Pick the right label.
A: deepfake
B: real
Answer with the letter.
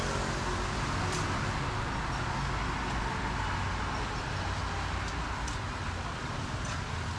B